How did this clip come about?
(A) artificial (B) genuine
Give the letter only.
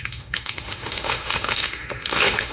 A